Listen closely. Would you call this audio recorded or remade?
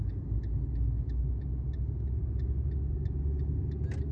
recorded